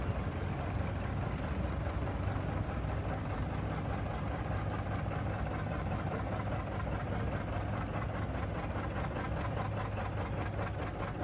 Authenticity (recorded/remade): recorded